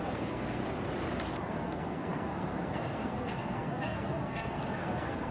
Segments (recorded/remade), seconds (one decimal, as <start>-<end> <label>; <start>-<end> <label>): 0.0-0.6 remade; 0.6-1.5 recorded; 1.5-5.3 remade